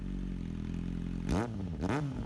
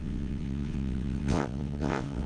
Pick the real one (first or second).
first